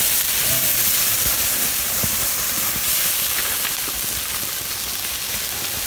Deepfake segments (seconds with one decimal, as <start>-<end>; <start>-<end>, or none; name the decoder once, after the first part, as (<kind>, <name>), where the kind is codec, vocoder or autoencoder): 1.6-3.1 (vocoder, BigVGAN v2)